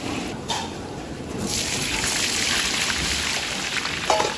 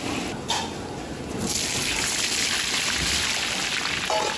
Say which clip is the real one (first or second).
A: second